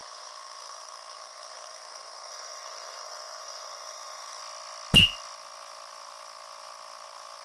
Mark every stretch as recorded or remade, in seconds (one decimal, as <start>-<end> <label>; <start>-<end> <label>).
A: 0.0-4.4 remade; 4.4-7.4 recorded